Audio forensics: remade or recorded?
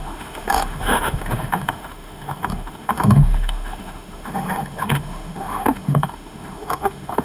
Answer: remade